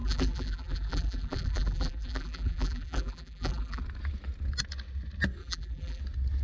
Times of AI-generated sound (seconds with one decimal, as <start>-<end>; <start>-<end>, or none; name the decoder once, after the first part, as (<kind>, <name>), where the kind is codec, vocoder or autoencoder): 0.0-3.8 (vocoder, BigVGAN v2); 5.4-6.0